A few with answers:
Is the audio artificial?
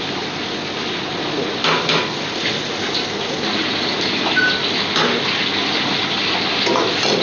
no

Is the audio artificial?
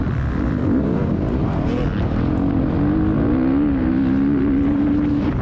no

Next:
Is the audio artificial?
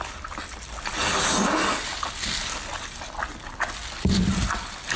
no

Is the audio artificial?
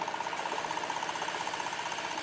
no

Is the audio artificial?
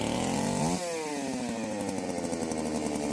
no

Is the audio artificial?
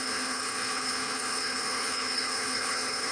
yes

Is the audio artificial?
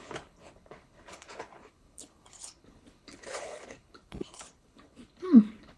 yes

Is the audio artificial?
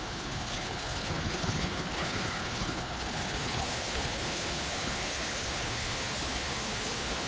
yes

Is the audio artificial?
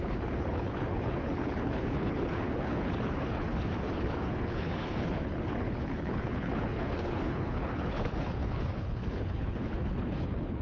yes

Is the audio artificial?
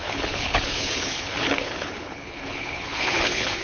yes